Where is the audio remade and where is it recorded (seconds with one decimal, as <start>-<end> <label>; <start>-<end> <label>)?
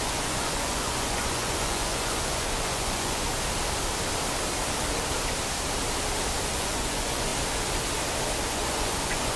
0.0-3.3 remade; 3.3-6.5 recorded; 6.5-7.3 remade; 7.3-8.5 recorded; 8.5-9.4 remade